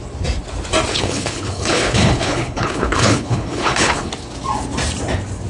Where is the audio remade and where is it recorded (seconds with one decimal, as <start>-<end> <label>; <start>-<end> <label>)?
0.0-0.9 recorded; 0.9-4.1 remade; 4.1-5.5 recorded